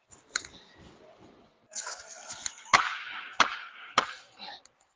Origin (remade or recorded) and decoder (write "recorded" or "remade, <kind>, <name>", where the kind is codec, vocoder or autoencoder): recorded